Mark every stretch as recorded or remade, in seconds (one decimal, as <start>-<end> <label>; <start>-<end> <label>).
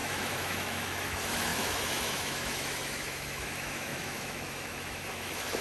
0.0-5.6 remade